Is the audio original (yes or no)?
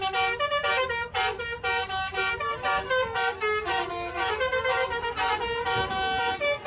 yes